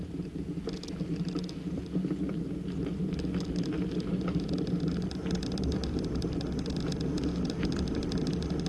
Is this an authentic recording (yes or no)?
yes